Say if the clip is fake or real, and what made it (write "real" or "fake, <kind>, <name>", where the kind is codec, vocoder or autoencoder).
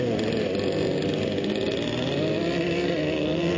real